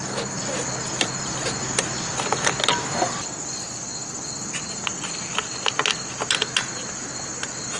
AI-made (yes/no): no